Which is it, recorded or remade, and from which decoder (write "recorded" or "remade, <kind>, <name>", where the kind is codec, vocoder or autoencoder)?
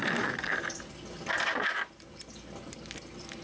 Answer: recorded